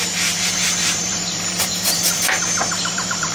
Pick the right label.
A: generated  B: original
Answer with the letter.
A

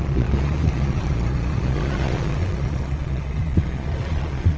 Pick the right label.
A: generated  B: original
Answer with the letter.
A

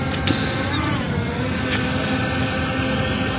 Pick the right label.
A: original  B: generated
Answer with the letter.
A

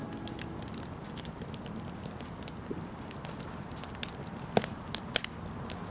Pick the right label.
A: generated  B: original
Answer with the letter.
B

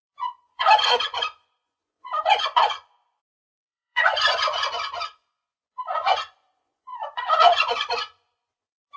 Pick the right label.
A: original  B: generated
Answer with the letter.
B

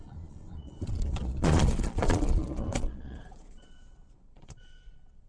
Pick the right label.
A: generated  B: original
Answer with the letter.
A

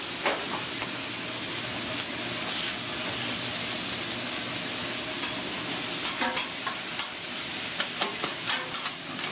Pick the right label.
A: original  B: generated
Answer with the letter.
A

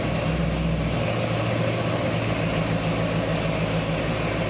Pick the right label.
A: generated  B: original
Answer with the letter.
B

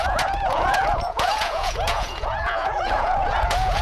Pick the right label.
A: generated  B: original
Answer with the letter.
A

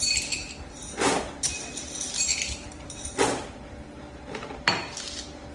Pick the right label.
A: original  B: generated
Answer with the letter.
A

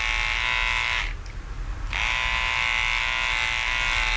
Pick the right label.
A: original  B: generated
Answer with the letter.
A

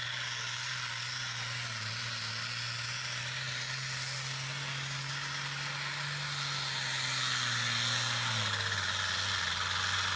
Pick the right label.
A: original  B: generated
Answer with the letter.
A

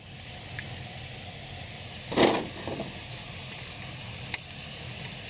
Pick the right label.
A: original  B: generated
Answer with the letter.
A